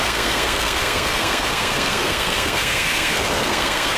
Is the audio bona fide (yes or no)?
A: no